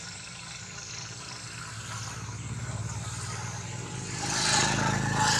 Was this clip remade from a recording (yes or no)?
no